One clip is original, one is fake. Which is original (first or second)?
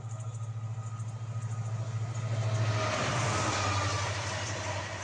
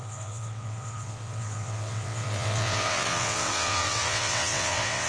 first